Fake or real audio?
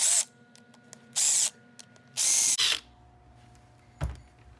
real